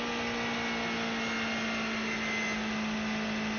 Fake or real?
real